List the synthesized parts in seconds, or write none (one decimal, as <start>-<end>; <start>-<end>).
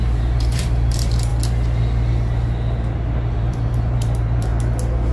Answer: 0.0-1.3; 3.3-4.5